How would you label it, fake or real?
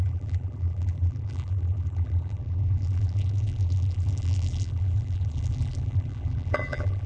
fake